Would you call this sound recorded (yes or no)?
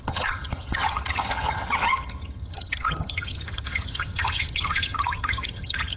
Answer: no